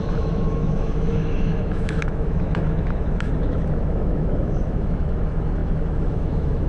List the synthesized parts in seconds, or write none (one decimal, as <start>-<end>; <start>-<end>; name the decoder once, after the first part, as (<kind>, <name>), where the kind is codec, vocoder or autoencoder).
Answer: 0.0-6.7 (autoencoder, DAC-VAE)